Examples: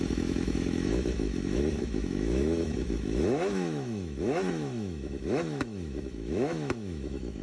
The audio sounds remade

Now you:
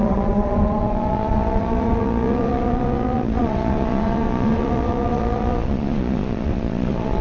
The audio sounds remade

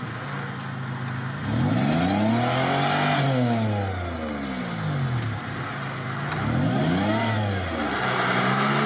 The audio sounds recorded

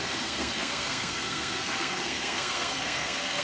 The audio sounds remade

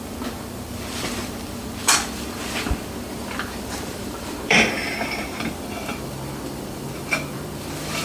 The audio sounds remade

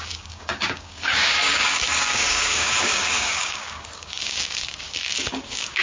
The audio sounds remade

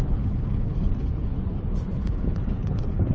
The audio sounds remade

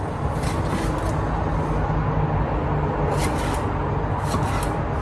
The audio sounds recorded